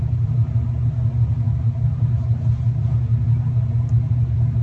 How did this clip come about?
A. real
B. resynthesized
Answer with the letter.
A